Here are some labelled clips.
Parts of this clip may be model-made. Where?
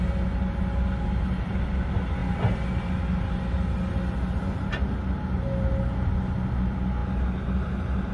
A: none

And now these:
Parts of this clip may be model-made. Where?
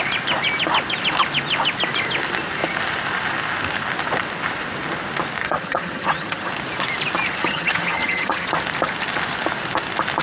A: 5.4-6.5 (vocoder, HiFi-GAN); 7.4-8.5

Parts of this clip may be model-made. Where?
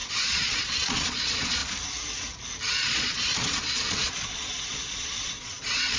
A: 0.0-1.6 (vocoder, Vocos); 2.7-6.0